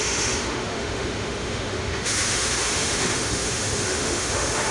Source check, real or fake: fake